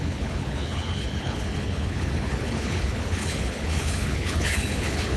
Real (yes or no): no